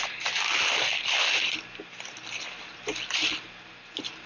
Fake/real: real